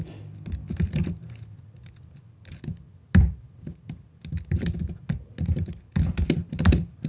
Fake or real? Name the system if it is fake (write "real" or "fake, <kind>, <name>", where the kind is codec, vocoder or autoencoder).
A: real